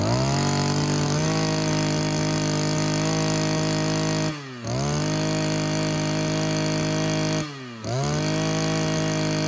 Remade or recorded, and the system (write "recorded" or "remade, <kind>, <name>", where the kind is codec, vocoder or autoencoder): recorded